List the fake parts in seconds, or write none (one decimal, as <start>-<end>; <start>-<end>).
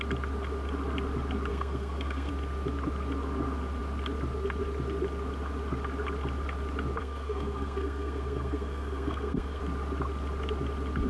1.5-2.3; 7.0-9.6